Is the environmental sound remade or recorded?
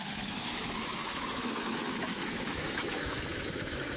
remade